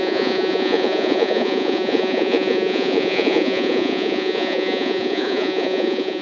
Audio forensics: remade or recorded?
remade